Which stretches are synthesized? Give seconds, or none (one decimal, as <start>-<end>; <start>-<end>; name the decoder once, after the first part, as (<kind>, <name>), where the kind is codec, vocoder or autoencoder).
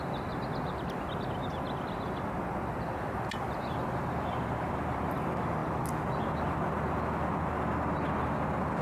none